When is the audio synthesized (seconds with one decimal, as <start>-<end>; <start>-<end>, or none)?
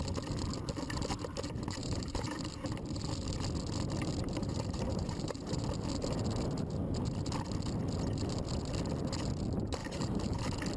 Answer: 1.8-2.4; 4.4-5.6; 9.8-10.4